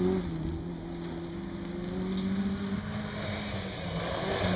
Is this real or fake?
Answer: real